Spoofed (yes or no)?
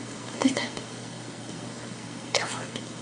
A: yes